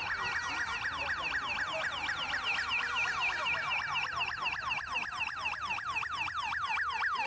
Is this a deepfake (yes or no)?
no